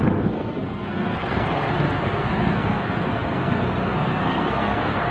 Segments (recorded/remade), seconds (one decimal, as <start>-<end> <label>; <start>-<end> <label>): 0.0-5.1 remade